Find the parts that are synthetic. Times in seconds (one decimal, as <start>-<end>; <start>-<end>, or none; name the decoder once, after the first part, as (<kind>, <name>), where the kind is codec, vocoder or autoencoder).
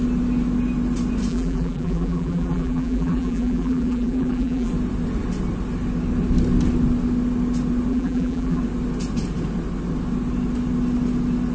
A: 1.3-4.7 (vocoder, BigVGAN v2); 7.9-8.6